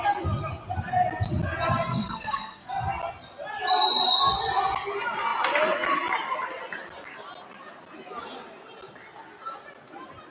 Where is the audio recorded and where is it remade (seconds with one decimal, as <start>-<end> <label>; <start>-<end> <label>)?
0.0-1.9 recorded; 1.9-2.7 remade; 2.7-10.3 recorded